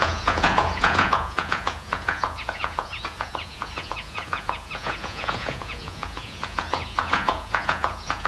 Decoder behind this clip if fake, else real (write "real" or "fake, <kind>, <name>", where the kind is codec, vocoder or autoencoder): fake, vocoder, Vocos